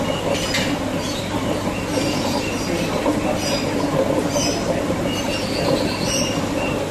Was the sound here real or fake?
real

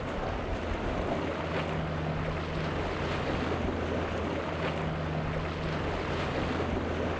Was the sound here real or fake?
real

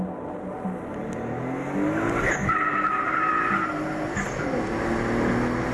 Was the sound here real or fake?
real